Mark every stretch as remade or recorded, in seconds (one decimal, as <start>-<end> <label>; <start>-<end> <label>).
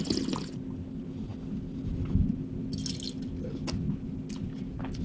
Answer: 0.0-5.0 recorded